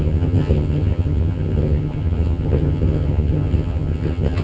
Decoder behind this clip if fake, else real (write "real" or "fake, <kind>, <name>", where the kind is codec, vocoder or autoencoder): fake, vocoder, HiFi-GAN